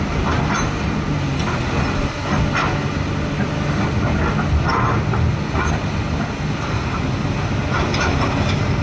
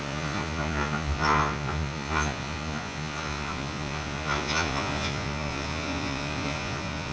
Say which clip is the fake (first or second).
second